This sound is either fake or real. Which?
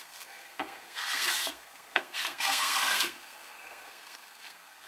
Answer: fake